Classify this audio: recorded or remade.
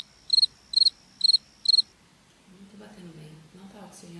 recorded